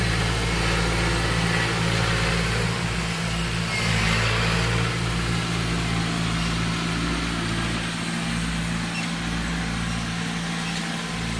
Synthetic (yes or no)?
no